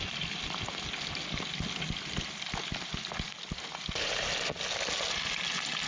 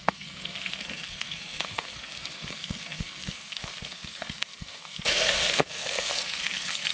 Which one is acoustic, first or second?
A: first